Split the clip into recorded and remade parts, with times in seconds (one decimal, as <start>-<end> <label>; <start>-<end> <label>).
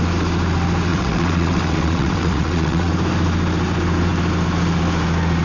0.0-0.9 recorded; 0.9-2.9 remade; 2.9-5.4 recorded